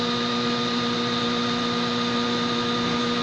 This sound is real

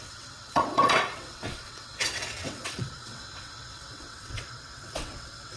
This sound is fake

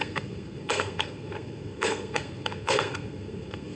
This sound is fake